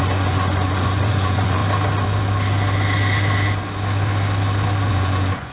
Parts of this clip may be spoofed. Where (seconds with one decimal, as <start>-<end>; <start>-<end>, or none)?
0.0-1.6; 4.9-5.5